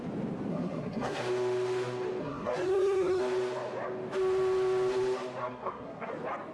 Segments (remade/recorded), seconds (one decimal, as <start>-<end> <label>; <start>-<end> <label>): 0.0-0.5 recorded; 0.5-1.2 remade; 1.2-2.2 recorded; 2.2-3.2 remade; 3.2-5.4 recorded; 5.4-6.1 remade; 6.1-6.5 recorded